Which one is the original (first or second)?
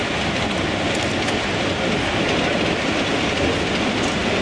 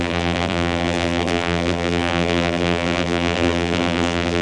first